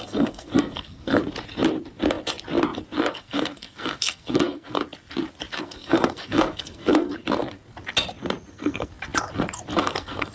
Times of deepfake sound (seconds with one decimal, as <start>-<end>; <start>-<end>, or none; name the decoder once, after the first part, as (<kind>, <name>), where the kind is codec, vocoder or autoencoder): 0.0-1.2 (codec, SNAC); 3.1-4.8; 5.6-7.1; 8.5-8.9; 9.8-10.3